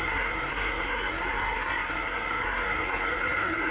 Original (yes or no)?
no